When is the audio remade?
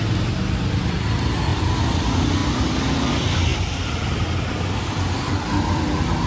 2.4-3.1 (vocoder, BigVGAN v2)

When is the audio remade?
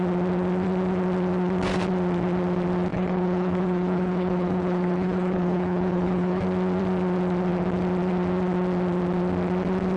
2.9-6.4 (codec, HILCodec)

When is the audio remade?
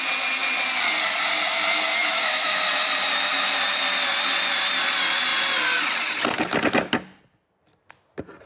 2.0-2.6 (autoencoder, DAC-VAE)